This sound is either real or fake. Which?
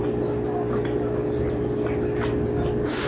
real